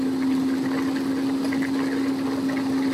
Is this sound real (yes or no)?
yes